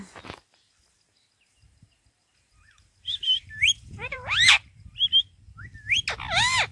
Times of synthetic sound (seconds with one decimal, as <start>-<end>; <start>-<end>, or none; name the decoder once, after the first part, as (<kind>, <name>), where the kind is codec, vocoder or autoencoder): 1.5-5.2 (vocoder, BigVGAN v2)